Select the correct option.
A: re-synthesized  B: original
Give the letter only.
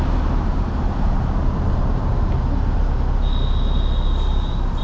B